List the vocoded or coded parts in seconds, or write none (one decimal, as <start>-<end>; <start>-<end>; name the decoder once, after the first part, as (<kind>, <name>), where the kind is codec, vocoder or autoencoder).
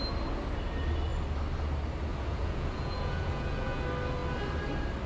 2.1-3.8 (vocoder, Vocos)